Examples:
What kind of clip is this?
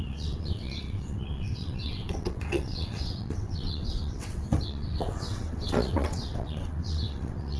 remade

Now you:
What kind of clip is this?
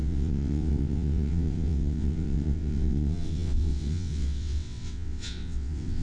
remade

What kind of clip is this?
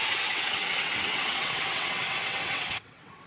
remade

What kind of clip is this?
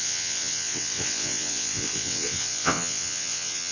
remade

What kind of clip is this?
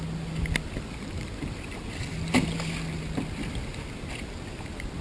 recorded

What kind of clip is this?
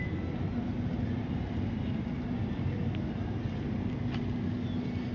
recorded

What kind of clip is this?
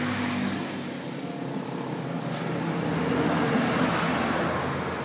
recorded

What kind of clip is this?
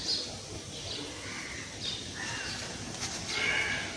recorded